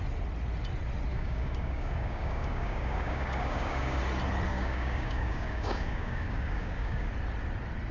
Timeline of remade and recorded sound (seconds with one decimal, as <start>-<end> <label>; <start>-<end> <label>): 0.0-1.1 recorded; 1.1-4.0 remade; 4.0-4.5 recorded; 4.5-7.1 remade; 7.1-7.9 recorded